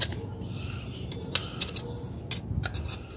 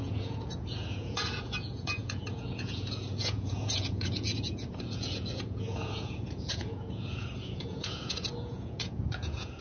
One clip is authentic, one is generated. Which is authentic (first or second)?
first